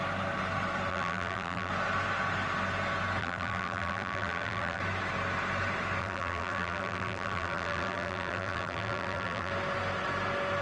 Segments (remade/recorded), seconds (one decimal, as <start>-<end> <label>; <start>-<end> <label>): 0.0-0.9 recorded; 0.9-1.7 remade; 1.7-3.2 recorded; 3.2-4.8 remade; 4.8-6.0 recorded; 6.0-9.5 remade; 9.5-10.6 recorded